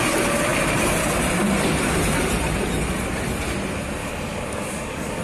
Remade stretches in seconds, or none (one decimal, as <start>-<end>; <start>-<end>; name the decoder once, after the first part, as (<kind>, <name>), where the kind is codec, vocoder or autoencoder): 4.0-5.2 (codec, DAC)